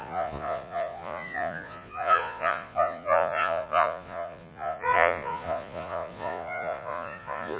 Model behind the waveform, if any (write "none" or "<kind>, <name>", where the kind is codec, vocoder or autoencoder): vocoder, Vocos